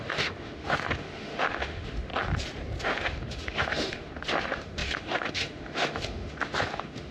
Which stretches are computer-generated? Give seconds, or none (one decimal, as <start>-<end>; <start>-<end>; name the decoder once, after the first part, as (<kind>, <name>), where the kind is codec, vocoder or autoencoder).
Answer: 0.0-2.1 (autoencoder, DAC-VAE); 2.8-7.1